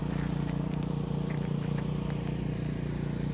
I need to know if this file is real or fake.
fake